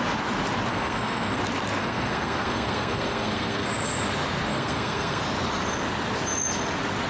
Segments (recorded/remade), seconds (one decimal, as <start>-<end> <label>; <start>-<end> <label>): 0.0-0.7 recorded; 0.7-1.4 remade; 1.4-1.8 recorded; 1.8-3.7 remade; 3.7-4.5 recorded; 4.5-5.2 remade; 5.2-7.1 recorded